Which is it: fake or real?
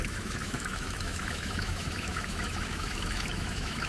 fake